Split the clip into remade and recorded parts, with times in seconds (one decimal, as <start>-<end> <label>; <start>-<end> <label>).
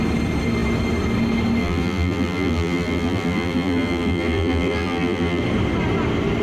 0.0-1.6 recorded; 1.6-5.4 remade; 5.4-6.4 recorded